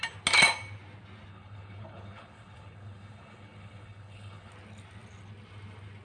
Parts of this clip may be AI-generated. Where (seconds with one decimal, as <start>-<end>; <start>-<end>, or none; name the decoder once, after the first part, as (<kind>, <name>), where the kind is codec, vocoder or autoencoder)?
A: 1.3-4.5 (codec, HILCodec)